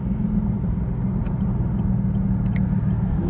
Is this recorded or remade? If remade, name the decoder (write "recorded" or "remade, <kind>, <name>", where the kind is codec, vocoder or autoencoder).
recorded